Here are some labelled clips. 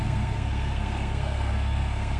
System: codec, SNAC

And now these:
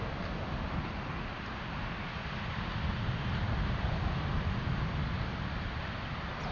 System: none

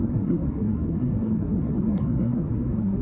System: codec, SNAC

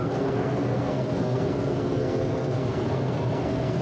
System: codec, SNAC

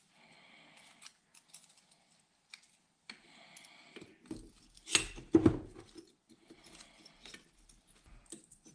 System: none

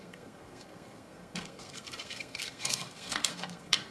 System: codec, SNAC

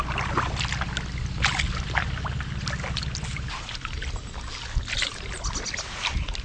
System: none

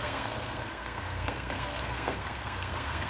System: codec, SNAC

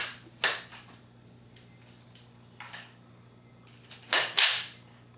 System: none